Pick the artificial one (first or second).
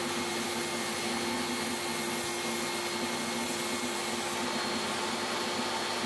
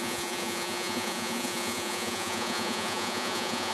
second